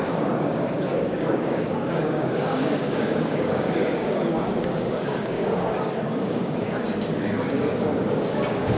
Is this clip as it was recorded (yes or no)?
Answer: no